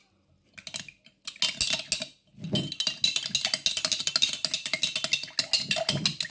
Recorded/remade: recorded